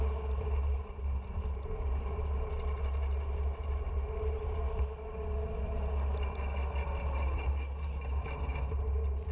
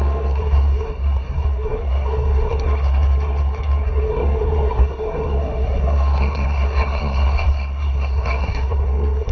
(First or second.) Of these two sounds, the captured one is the first